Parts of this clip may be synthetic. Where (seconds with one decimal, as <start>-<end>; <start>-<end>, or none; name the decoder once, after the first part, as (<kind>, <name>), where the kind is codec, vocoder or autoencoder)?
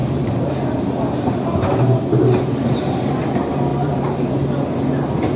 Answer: 0.0-3.2 (vocoder, BigVGAN v2); 3.7-4.4